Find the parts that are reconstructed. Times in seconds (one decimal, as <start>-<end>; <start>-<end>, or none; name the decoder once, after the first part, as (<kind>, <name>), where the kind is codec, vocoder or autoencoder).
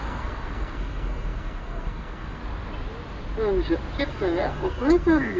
0.0-2.4 (codec, SNAC); 4.0-5.4